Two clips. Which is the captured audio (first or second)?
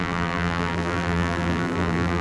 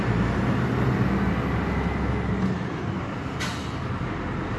second